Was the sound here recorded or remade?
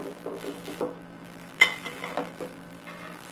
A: remade